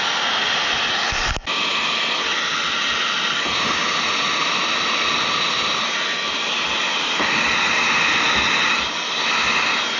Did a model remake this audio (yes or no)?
no